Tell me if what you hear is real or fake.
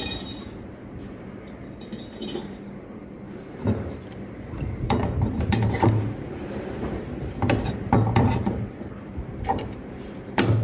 fake